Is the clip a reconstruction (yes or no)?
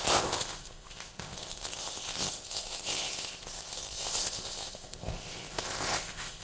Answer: yes